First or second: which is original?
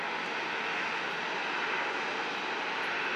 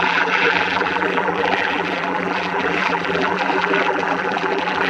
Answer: first